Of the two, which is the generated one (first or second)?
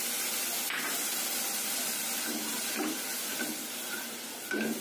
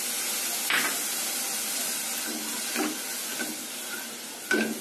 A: first